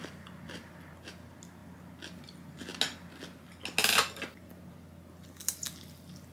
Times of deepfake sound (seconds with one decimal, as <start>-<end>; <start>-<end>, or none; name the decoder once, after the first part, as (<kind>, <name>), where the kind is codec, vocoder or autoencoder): none